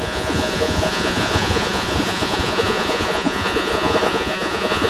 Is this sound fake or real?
fake